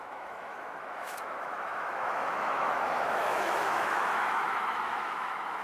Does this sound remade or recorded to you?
remade